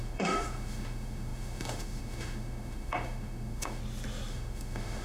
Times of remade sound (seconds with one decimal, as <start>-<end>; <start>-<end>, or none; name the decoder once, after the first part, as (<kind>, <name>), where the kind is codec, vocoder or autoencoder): 0.0-3.8 (autoencoder, DAC-VAE); 4.3-5.0